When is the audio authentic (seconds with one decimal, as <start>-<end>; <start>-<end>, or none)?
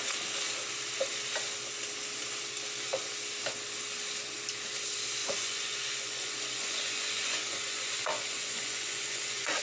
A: 0.0-5.2